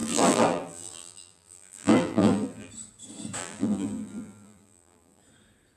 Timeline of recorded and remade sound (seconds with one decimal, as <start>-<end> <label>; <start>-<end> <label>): 0.0-2.7 remade; 2.7-3.4 recorded; 3.4-5.2 remade; 5.2-5.8 recorded